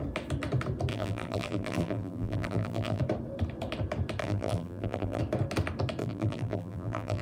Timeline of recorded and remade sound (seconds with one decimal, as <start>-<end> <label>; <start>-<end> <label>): 0.0-0.9 recorded; 0.9-3.0 remade; 3.0-4.2 recorded; 4.2-5.2 remade; 5.2-6.0 recorded; 6.0-7.2 remade

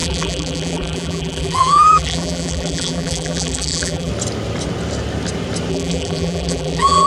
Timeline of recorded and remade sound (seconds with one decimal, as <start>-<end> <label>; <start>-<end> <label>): 0.0-4.1 remade; 4.1-5.7 recorded; 5.7-7.1 remade

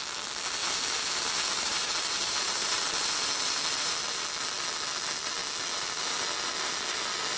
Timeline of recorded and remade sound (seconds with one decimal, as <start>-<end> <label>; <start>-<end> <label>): 0.0-0.6 recorded; 0.6-4.0 remade; 4.0-7.4 recorded